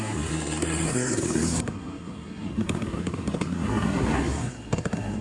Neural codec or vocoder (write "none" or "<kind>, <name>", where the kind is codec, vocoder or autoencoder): codec, SNAC